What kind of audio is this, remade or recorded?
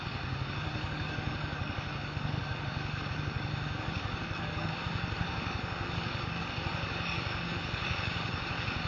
remade